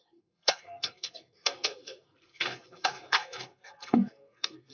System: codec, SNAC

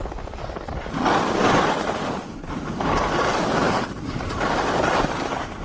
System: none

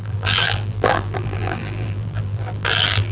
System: vocoder, BigVGAN v2